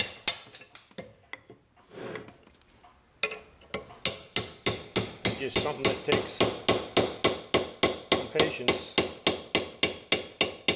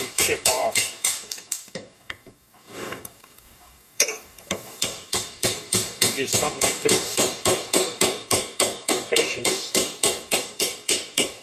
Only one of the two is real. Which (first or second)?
first